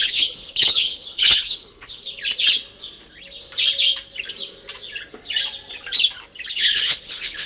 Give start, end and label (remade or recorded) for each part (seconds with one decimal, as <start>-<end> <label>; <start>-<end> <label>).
0.0-2.0 remade; 2.0-6.5 recorded; 6.5-7.5 remade